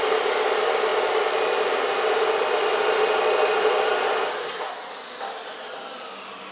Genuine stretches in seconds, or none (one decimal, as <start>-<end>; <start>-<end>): 0.0-6.5